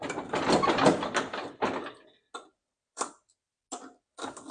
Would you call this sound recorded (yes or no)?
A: yes